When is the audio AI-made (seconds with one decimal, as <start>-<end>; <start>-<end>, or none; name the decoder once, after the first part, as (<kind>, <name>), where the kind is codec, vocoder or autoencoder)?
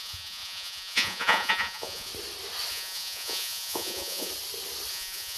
0.0-2.1 (vocoder, Vocos); 2.7-4.3; 4.9-5.4